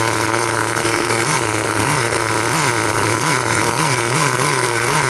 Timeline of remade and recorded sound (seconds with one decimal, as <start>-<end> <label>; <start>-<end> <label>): 0.0-2.3 remade; 2.3-2.9 recorded; 2.9-5.1 remade